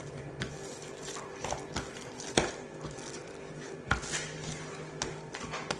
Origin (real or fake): real